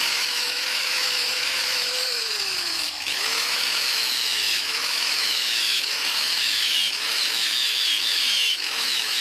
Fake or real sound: fake